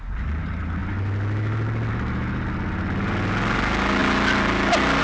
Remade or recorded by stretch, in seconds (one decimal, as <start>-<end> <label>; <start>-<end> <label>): 0.0-5.0 recorded

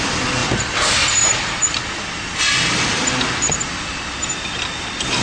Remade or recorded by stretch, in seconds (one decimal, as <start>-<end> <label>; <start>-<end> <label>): 0.0-5.2 recorded